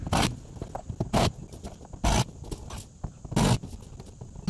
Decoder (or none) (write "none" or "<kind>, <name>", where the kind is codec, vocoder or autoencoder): none